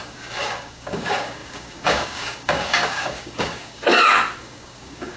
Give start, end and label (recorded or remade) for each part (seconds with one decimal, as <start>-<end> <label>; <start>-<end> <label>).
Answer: 0.0-3.9 remade; 3.9-4.4 recorded; 4.4-5.2 remade